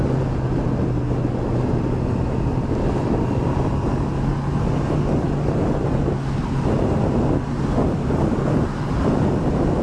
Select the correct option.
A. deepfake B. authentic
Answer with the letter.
B